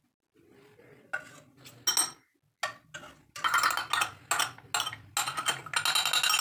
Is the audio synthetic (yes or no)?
no